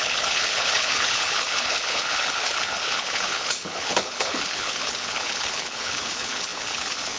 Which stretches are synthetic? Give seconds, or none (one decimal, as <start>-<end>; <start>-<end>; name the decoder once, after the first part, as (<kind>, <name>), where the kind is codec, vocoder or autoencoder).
0.0-7.2 (codec, HILCodec)